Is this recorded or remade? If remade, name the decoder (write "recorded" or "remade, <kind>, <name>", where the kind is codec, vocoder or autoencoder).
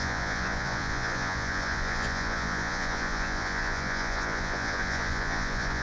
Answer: remade, vocoder, Vocos